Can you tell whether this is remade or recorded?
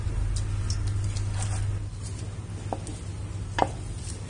recorded